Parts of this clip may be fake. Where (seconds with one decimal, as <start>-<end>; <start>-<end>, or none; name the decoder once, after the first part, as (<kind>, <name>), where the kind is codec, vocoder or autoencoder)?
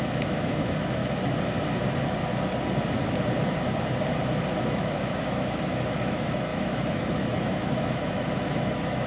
0.0-1.0 (autoencoder, DAC-VAE); 4.2-9.1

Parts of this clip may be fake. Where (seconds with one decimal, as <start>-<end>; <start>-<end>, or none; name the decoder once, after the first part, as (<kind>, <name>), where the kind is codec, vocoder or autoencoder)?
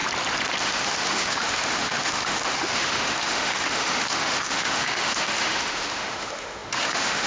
0.6-7.3 (autoencoder, DAC-VAE)